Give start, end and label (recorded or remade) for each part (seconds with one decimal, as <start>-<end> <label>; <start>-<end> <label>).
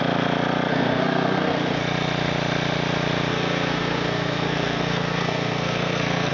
0.0-0.7 recorded; 0.7-1.8 remade; 1.8-3.3 recorded; 3.3-6.3 remade